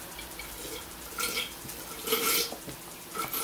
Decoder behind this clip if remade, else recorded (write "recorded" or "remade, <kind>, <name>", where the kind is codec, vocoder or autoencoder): recorded